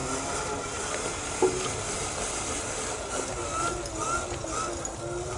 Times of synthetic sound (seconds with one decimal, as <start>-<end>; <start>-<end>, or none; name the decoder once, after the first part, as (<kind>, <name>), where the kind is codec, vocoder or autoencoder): none